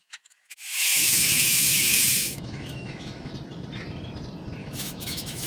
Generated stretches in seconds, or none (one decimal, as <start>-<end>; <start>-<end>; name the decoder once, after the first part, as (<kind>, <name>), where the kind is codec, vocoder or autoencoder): 0.0-3.3 (autoencoder, DAC-VAE); 4.6-5.5